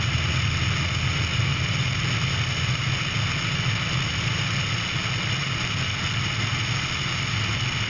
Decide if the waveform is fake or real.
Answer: real